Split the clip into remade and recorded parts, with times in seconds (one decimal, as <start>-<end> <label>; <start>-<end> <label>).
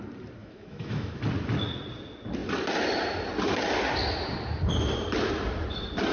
0.0-0.4 recorded; 0.4-1.1 remade; 1.1-6.1 recorded